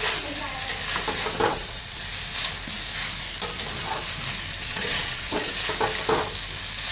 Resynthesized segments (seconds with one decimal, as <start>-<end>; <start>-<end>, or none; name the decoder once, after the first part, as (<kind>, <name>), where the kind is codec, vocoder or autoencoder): 1.5-2.0 (vocoder, WaveNeXt); 4.6-5.5